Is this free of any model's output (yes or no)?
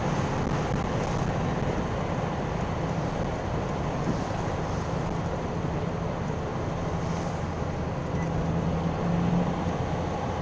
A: yes